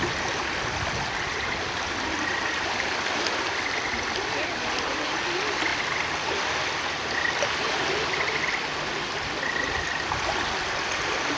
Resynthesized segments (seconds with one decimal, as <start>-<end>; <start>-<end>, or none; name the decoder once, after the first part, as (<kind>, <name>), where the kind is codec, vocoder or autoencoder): none